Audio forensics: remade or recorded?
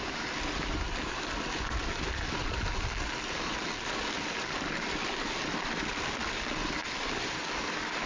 recorded